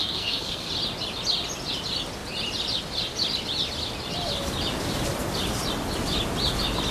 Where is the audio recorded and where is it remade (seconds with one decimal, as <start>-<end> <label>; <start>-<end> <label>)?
0.0-0.7 remade; 0.7-6.9 recorded